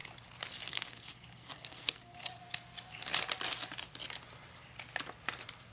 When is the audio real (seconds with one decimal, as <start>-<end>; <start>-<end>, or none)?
0.0-0.7; 2.3-5.7